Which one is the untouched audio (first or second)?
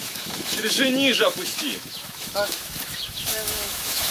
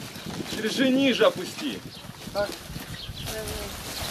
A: second